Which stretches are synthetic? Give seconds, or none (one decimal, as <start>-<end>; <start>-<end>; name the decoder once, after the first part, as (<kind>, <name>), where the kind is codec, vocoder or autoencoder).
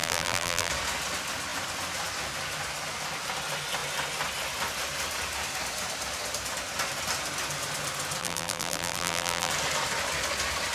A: 0.0-0.7 (vocoder, BigVGAN v2); 8.2-9.5